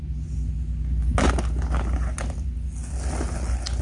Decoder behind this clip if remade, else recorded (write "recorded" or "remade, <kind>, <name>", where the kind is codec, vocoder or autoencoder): recorded